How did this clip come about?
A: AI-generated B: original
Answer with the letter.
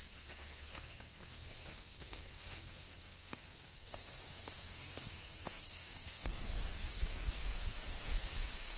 A